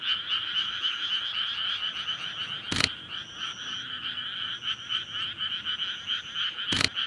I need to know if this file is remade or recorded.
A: recorded